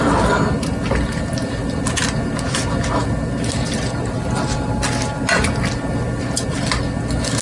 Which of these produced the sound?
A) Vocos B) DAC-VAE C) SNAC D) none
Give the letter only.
D